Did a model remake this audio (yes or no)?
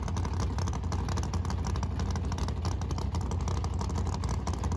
no